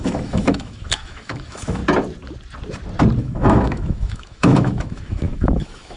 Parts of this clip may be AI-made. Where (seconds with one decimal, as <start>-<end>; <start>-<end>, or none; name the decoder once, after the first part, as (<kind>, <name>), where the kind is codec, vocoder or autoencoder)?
0.0-1.8 (autoencoder, DAC-VAE); 3.2-6.0